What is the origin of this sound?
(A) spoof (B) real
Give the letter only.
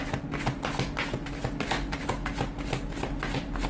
B